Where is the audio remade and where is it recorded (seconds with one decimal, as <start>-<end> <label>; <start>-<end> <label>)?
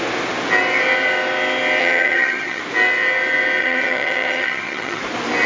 0.0-1.8 recorded; 1.8-2.6 remade; 2.6-3.6 recorded; 3.6-5.0 remade; 5.0-5.5 recorded